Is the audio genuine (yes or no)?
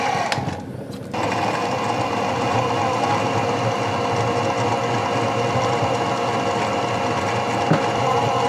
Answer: yes